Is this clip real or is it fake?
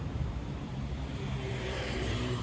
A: fake